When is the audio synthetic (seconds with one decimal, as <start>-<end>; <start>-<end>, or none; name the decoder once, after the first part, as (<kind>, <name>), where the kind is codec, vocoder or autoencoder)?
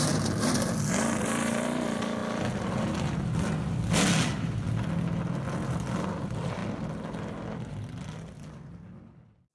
0.0-2.2 (vocoder, BigVGAN v2); 5.7-6.6